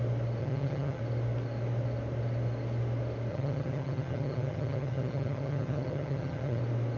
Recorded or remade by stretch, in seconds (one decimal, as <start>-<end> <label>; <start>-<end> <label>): 0.0-0.4 recorded; 0.4-1.0 remade; 1.0-3.3 recorded; 3.3-6.6 remade; 6.6-7.0 recorded